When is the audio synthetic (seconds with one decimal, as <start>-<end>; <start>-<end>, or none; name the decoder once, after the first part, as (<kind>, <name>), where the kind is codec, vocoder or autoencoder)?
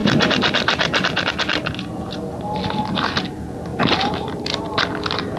0.0-1.2 (vocoder, BigVGAN v2); 3.7-5.0